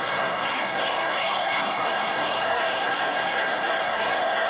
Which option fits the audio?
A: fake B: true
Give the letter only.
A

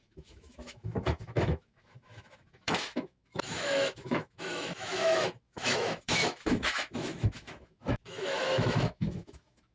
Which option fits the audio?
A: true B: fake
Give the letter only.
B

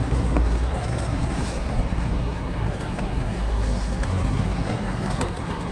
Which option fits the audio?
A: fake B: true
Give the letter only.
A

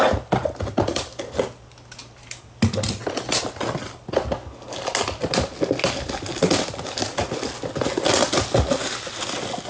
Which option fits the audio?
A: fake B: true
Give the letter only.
B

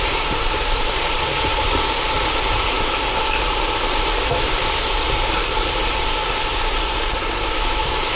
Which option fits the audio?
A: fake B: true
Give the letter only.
A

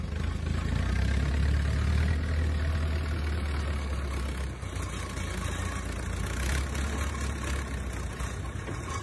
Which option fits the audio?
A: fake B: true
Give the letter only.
B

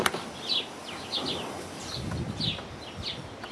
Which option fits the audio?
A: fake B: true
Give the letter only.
B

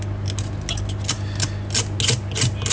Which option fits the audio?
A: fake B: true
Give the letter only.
B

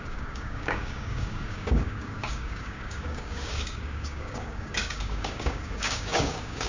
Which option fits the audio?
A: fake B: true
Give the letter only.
A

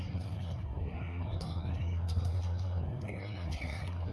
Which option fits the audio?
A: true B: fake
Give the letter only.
B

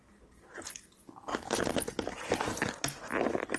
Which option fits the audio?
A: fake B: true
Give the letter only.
B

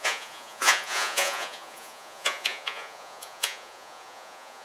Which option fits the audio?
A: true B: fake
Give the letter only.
B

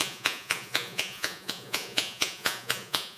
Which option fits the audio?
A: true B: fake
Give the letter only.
B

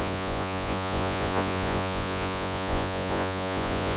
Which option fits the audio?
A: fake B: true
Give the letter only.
A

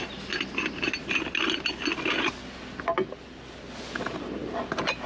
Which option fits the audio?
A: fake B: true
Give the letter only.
B